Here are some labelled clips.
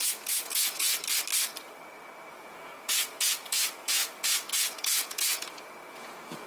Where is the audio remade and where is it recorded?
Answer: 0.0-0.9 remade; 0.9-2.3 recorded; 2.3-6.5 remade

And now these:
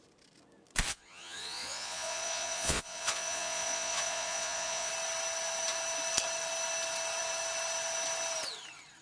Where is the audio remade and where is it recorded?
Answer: 0.0-0.9 recorded; 0.9-4.9 remade; 4.9-9.0 recorded

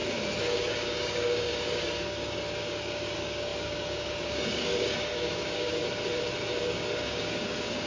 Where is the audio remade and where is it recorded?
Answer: 0.0-0.5 recorded; 0.5-5.8 remade; 5.8-6.6 recorded; 6.6-7.9 remade

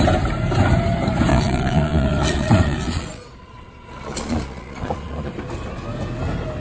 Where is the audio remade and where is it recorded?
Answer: 0.0-1.3 recorded; 1.3-5.3 remade; 5.3-6.6 recorded